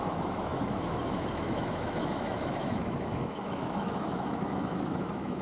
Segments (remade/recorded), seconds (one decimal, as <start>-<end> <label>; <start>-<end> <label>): 0.0-5.4 remade